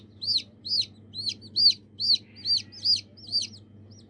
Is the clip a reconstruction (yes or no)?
no